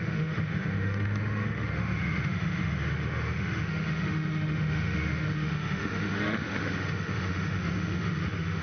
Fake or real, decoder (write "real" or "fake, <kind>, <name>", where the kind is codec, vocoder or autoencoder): fake, autoencoder, DAC-VAE